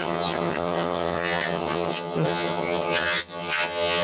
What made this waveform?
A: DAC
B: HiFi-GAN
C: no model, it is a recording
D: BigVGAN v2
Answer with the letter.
B